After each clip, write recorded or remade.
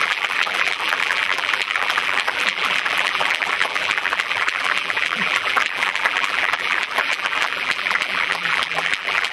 remade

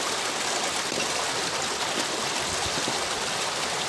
recorded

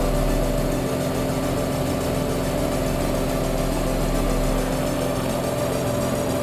recorded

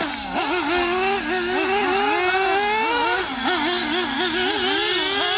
recorded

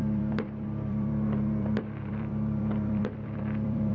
remade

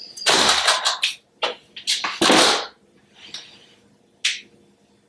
recorded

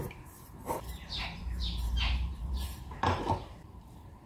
remade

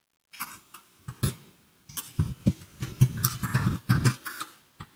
recorded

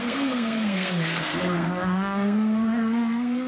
remade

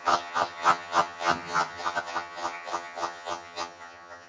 remade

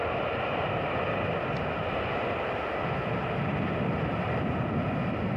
recorded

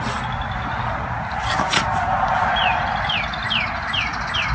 recorded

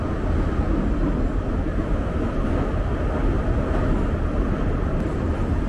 recorded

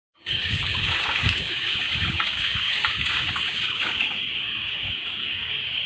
remade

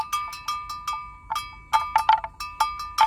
recorded